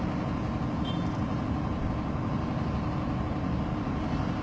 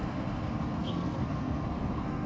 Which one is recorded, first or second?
first